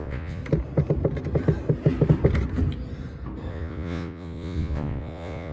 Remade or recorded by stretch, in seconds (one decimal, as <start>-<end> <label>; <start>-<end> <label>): 0.0-0.4 remade; 0.4-3.5 recorded; 3.5-5.5 remade